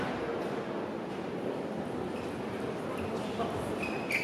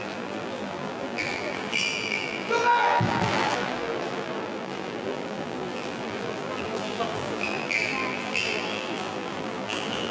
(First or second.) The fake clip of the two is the second